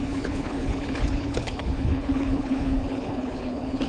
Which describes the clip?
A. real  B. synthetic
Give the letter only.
B